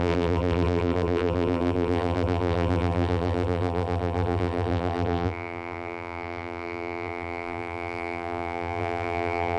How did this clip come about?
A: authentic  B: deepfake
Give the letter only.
B